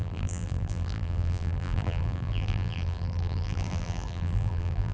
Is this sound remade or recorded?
remade